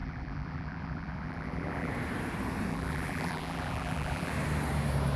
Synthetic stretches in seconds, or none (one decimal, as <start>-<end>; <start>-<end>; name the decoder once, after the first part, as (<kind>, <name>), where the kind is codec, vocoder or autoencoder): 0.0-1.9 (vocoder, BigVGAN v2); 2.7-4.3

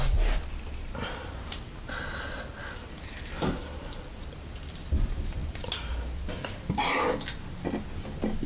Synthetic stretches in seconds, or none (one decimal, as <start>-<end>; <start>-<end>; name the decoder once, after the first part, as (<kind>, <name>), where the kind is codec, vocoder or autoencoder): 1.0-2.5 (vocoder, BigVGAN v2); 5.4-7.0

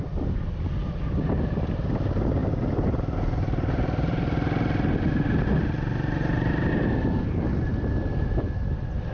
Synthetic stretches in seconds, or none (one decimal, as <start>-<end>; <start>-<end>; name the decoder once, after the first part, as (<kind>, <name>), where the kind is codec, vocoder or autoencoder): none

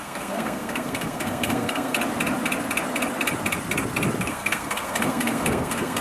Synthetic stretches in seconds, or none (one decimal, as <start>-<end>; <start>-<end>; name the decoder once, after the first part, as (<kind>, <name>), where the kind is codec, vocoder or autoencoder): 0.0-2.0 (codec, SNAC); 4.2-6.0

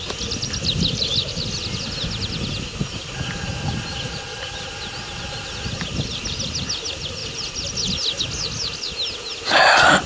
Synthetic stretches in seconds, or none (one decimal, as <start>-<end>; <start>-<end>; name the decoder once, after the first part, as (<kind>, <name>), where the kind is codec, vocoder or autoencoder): none